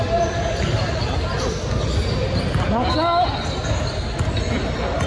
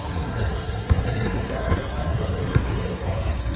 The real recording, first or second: first